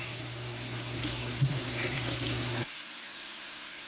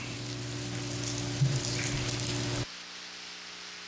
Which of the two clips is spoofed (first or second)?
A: first